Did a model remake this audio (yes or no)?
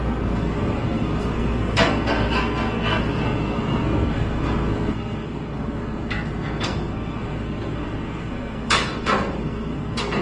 yes